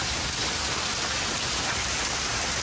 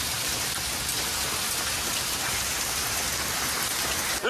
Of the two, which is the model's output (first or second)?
first